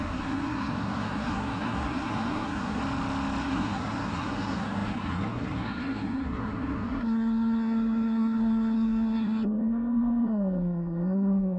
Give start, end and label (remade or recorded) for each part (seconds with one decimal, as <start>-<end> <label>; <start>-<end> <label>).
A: 0.0-2.8 remade; 2.8-3.4 recorded; 3.4-11.6 remade